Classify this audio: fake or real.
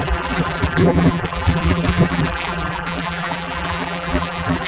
fake